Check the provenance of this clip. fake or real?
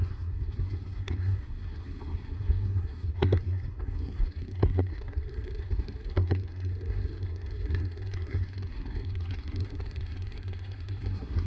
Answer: fake